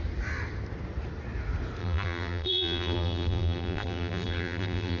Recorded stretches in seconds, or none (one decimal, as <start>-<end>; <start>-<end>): 0.0-1.8